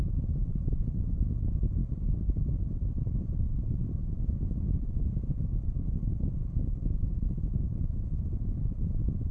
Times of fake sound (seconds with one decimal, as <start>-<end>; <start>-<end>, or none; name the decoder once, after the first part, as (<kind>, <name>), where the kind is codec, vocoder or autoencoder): 0.5-1.0 (vocoder, BigVGAN v2); 1.8-4.2